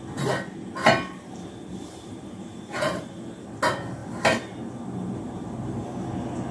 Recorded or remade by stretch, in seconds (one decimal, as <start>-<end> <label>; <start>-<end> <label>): 0.0-0.8 recorded; 0.8-3.1 remade; 3.1-6.5 recorded